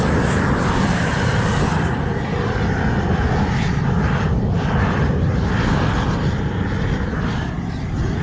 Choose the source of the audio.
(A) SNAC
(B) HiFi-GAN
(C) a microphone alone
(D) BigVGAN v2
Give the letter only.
C